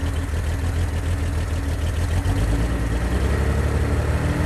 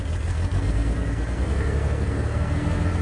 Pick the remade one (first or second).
second